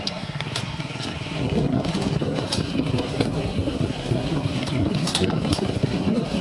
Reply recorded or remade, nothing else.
remade